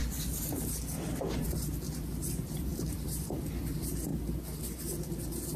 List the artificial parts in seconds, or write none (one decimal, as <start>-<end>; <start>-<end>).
2.2-4.1